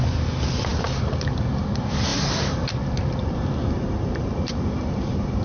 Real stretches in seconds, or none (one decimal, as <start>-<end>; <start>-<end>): 0.0-5.4